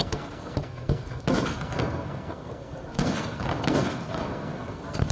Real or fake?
fake